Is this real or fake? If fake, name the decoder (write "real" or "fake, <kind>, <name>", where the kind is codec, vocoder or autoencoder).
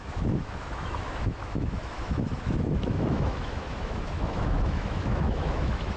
fake, autoencoder, DAC-VAE